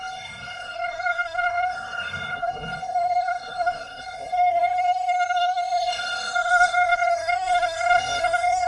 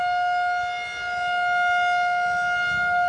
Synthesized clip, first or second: first